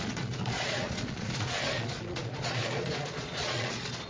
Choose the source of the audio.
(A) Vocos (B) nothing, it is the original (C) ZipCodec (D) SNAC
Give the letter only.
A